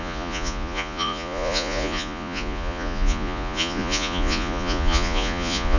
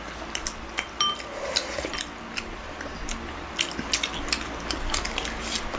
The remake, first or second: first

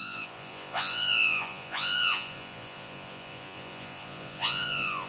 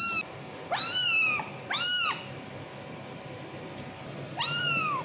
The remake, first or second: first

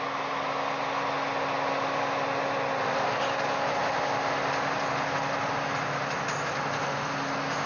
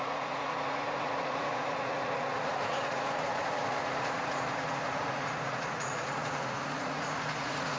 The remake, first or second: second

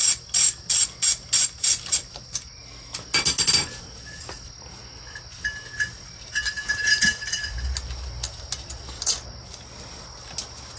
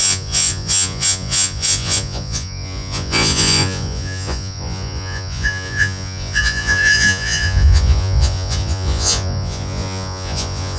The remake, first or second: second